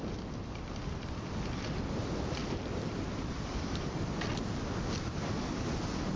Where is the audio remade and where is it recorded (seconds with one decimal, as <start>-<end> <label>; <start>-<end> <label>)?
0.0-2.4 recorded; 2.4-4.3 remade; 4.3-6.2 recorded